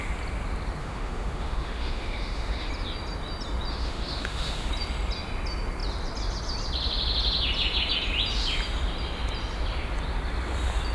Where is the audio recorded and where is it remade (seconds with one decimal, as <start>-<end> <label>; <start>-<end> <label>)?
0.0-0.8 recorded; 0.8-2.7 remade; 2.7-3.7 recorded; 3.7-4.7 remade; 4.7-10.9 recorded